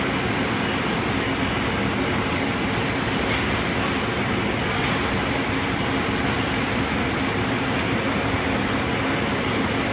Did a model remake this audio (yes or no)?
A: no